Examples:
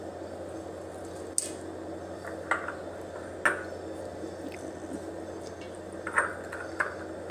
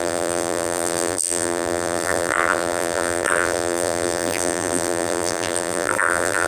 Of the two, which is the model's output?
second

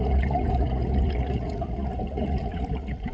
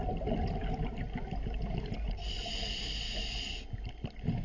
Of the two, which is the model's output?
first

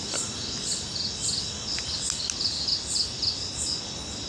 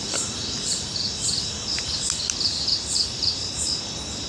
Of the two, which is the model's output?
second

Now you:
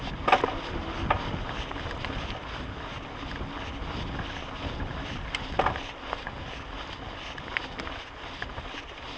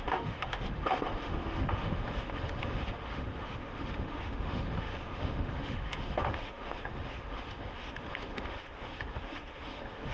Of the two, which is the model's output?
second